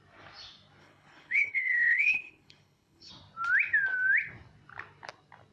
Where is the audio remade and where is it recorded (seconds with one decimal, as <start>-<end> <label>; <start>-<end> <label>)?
0.0-0.8 recorded; 0.8-3.1 remade; 3.1-5.5 recorded